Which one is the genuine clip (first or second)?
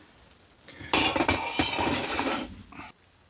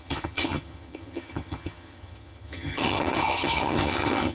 first